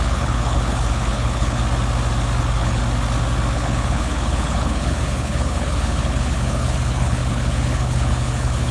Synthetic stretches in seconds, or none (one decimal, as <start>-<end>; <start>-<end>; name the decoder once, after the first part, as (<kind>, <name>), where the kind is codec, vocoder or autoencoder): 0.0-1.6 (codec, HILCodec); 2.4-2.8; 3.5-8.7